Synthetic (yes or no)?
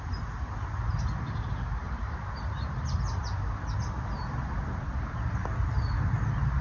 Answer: no